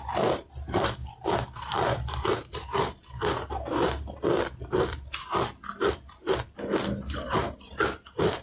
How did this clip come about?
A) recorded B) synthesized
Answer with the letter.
B